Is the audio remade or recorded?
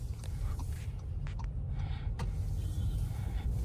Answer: recorded